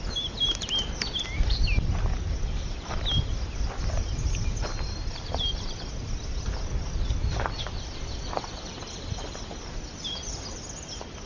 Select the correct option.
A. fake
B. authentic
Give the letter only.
B